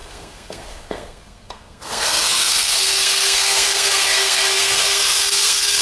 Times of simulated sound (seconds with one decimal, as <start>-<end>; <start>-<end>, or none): 0.0-5.8